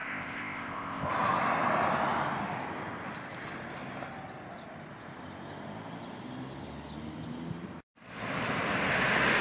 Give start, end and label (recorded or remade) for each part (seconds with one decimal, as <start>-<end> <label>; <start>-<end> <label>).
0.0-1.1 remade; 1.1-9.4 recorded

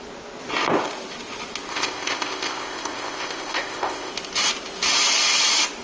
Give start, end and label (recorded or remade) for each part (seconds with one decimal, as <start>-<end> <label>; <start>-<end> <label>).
0.0-1.7 recorded; 1.7-4.1 remade; 4.1-5.8 recorded

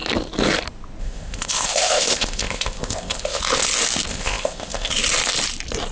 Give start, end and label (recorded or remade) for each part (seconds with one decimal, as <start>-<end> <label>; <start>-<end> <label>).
0.0-1.0 recorded; 1.0-3.4 remade; 3.4-4.1 recorded; 4.1-4.9 remade; 4.9-5.9 recorded

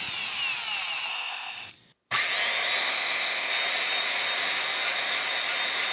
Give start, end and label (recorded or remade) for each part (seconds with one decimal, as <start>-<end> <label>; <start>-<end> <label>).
0.0-1.1 recorded; 1.1-1.7 remade; 1.7-2.8 recorded; 2.8-3.5 remade; 3.5-5.9 recorded